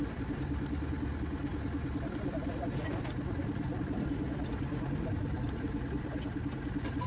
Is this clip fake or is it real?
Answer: real